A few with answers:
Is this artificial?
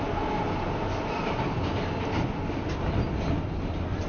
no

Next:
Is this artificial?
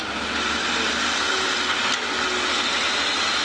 no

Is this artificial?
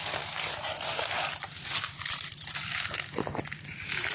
no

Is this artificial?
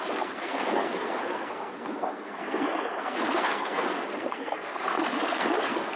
yes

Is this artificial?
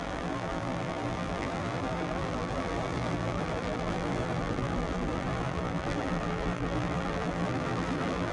yes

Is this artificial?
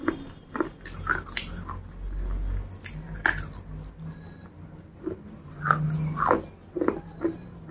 no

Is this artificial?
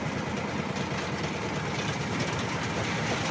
no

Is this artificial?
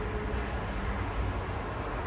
no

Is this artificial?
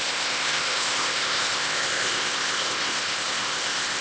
yes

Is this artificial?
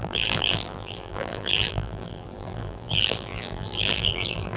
yes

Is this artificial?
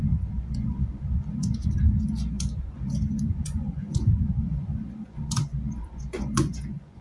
yes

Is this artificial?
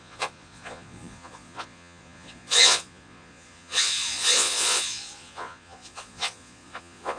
yes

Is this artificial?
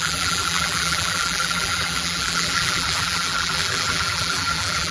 yes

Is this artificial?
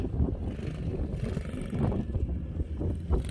no